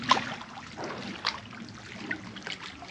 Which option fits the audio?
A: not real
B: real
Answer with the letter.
B